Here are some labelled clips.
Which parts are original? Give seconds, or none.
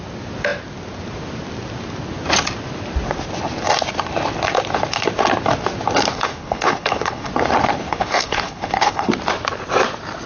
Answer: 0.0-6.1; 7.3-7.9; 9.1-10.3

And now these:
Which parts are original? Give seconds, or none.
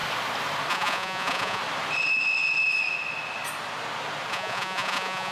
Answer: 0.0-0.7; 1.6-4.3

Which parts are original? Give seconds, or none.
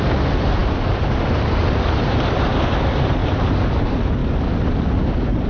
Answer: 4.2-5.0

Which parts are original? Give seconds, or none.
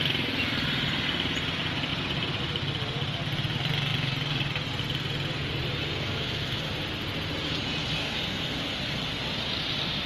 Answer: 0.0-5.8; 6.7-8.0; 8.6-10.1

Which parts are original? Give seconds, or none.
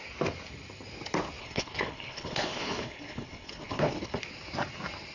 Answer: 0.0-1.4; 4.2-5.1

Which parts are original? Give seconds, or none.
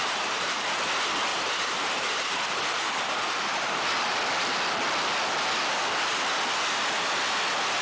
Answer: 0.8-1.3; 3.8-7.8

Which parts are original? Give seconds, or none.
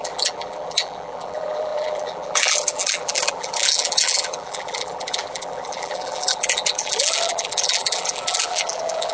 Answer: none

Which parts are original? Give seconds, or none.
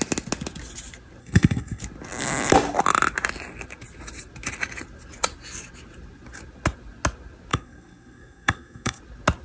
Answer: 0.0-1.2; 1.8-7.5; 9.0-9.4